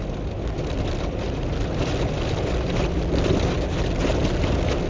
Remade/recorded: recorded